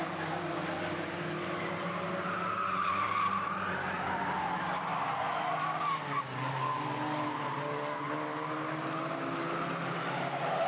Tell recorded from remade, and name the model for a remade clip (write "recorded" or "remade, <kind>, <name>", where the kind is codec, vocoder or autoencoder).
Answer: recorded